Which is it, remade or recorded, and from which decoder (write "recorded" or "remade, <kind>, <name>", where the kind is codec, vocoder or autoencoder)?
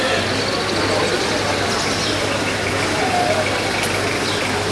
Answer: recorded